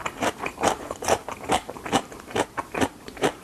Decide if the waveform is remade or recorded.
remade